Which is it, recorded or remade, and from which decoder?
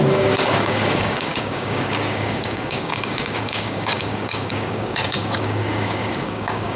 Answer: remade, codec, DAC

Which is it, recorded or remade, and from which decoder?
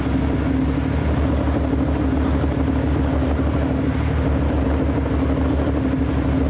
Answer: recorded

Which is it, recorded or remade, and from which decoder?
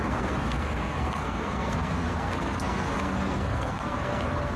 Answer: remade, codec, SNAC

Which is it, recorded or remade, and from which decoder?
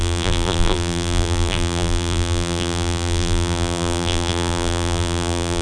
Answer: remade, vocoder, BigVGAN v2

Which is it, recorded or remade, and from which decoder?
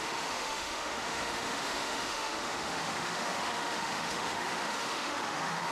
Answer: remade, autoencoder, DAC-VAE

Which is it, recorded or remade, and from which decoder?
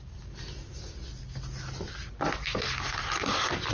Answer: recorded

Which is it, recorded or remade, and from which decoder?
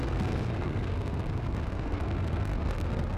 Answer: remade, codec, SNAC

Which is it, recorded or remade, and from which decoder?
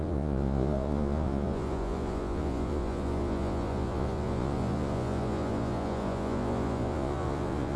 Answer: remade, vocoder, Vocos